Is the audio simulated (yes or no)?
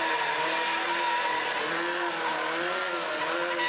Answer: no